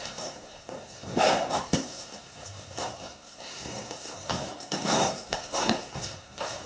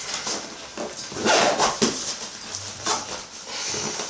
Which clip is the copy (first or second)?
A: first